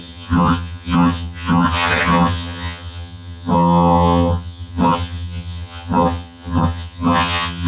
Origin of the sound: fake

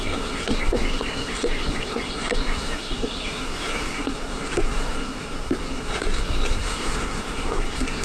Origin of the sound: fake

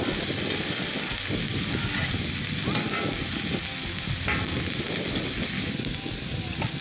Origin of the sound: real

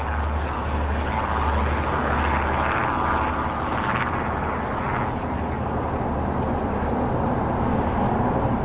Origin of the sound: real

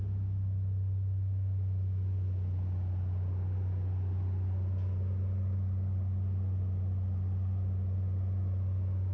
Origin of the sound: real